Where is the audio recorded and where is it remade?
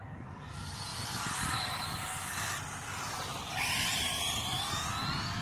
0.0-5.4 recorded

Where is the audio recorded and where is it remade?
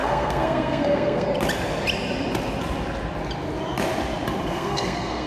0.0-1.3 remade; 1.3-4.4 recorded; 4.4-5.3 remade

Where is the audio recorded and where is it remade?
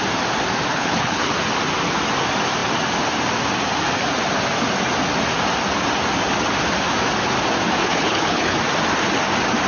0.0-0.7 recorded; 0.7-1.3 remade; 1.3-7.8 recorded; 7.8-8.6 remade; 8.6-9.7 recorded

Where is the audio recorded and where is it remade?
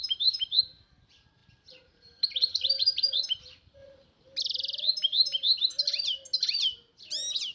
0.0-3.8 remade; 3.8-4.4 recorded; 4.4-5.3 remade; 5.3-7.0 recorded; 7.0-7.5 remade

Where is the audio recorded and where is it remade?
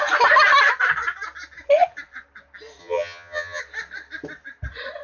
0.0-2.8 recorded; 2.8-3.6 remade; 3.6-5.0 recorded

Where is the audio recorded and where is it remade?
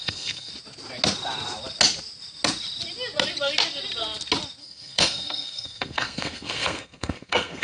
0.0-0.5 remade; 0.5-4.6 recorded; 4.6-7.6 remade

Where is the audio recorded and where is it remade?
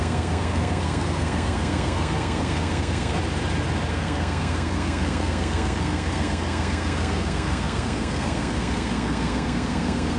0.0-3.2 remade; 3.2-3.9 recorded; 3.9-10.2 remade